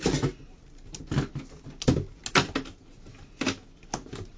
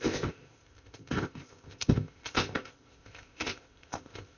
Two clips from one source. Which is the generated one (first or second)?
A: second